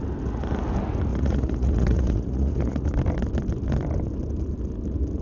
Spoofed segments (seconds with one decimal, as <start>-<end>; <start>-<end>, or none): 1.1-2.9